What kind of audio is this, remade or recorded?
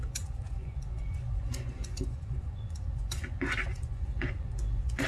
remade